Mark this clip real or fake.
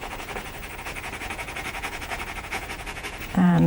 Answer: fake